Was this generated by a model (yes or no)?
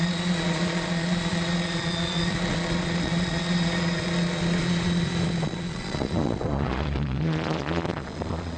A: yes